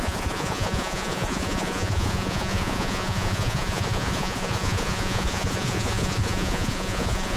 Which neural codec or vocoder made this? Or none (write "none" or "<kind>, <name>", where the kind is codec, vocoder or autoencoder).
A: vocoder, Vocos